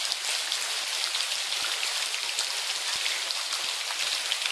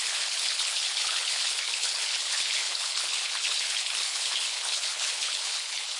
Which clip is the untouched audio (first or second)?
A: first